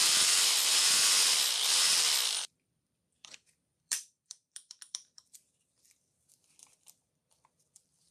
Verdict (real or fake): fake